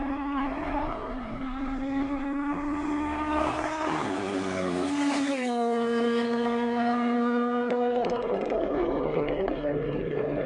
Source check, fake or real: fake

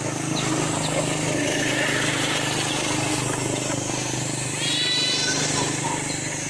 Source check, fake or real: real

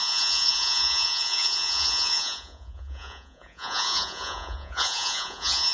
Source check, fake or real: fake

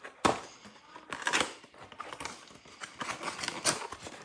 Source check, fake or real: real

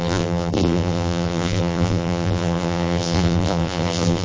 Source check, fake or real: fake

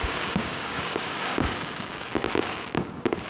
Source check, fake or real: fake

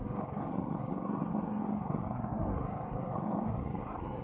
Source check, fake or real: fake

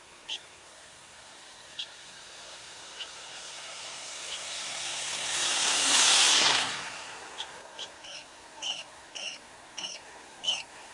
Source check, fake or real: fake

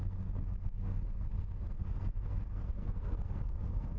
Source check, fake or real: fake